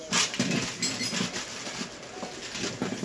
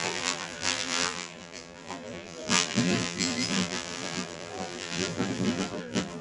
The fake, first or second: second